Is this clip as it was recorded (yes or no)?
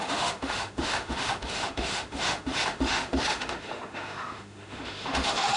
no